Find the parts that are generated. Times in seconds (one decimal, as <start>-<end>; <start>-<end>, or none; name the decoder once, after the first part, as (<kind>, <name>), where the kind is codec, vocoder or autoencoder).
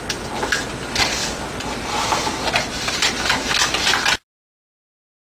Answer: none